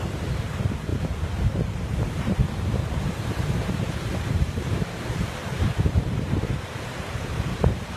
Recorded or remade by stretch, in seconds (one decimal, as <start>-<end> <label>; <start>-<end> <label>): 0.0-8.0 remade